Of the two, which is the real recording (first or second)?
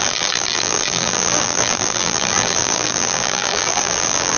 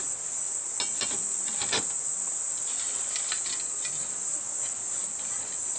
second